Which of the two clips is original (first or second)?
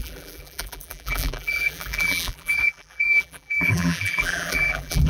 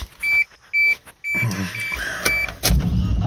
second